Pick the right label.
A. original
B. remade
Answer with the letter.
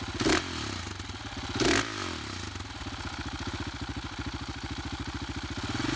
A